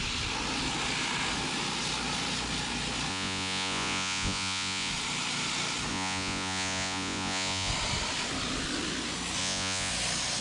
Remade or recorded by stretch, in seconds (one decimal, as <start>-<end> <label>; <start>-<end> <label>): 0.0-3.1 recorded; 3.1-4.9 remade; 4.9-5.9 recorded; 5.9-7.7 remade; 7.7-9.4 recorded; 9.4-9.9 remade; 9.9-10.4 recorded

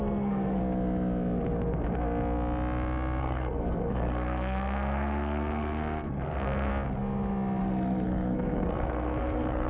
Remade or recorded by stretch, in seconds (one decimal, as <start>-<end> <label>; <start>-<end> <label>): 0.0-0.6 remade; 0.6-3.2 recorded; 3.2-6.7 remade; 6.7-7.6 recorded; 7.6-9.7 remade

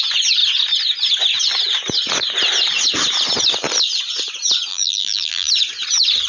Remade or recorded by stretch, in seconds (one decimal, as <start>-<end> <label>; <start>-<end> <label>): 0.0-4.7 recorded; 4.7-5.5 remade; 5.5-6.3 recorded

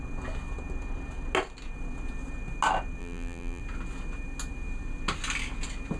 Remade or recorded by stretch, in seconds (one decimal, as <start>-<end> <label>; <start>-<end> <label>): 0.0-3.0 recorded; 3.0-3.6 remade; 3.6-6.0 recorded